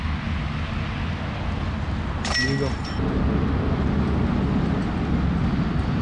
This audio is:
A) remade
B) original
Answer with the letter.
B